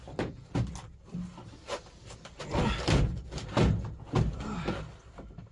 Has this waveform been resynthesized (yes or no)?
no